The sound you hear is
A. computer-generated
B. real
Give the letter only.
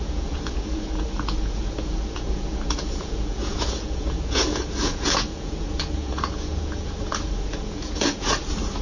A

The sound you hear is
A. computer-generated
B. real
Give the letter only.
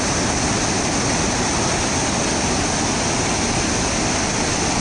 B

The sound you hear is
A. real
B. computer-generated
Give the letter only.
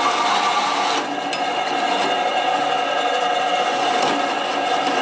A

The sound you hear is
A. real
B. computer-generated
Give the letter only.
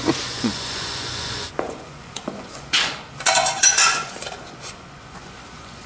B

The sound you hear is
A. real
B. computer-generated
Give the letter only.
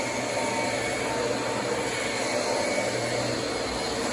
A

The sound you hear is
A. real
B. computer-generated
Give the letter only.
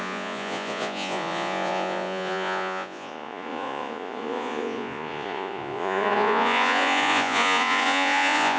B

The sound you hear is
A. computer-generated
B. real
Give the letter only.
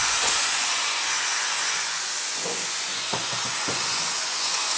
A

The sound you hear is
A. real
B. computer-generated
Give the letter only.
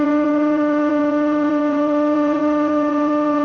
B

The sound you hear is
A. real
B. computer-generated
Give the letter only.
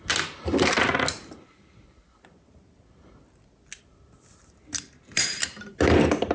A